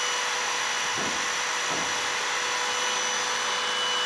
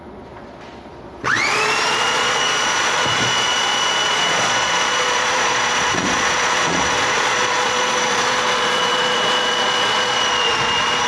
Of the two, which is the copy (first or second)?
second